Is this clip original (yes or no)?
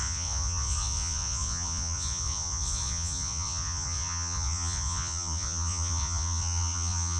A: no